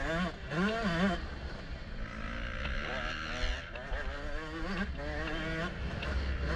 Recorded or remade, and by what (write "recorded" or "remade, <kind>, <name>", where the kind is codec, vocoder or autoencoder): recorded